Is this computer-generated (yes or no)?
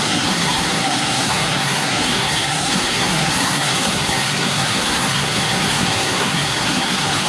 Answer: yes